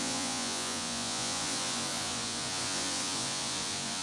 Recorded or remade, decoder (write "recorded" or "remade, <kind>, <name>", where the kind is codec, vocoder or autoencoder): remade, vocoder, Vocos